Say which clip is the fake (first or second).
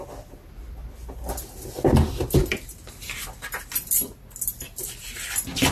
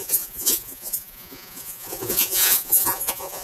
second